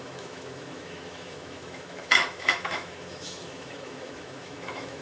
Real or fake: fake